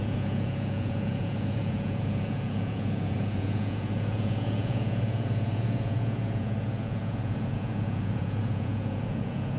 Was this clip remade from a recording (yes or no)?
yes